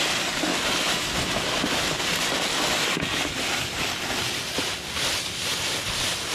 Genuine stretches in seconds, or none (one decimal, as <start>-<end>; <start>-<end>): 0.0-6.3